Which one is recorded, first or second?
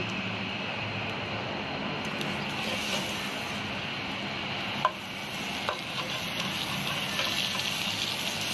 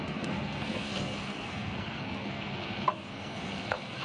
first